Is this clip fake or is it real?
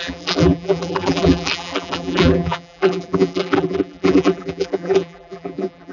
fake